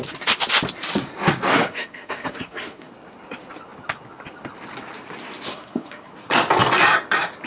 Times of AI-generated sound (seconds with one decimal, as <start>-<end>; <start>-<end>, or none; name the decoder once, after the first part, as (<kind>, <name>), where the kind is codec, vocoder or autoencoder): 1.5-2.9 (codec, SNAC); 5.5-6.1